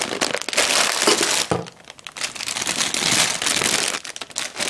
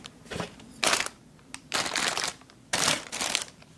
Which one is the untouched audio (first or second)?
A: first